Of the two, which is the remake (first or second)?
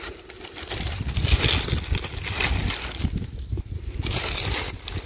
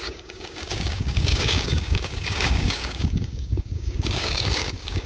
second